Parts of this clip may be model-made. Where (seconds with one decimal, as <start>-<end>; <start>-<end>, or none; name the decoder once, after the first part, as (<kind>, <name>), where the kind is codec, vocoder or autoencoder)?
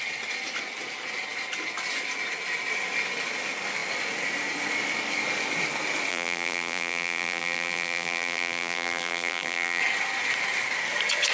6.1-9.8 (vocoder, BigVGAN v2)